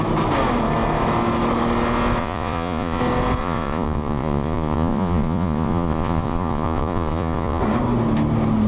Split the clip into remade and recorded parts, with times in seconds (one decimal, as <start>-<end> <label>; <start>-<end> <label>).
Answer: 0.0-2.2 recorded; 2.2-3.0 remade; 3.0-3.4 recorded; 3.4-7.6 remade; 7.6-8.7 recorded